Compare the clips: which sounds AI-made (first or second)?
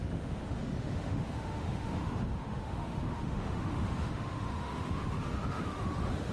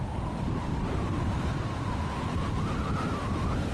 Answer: first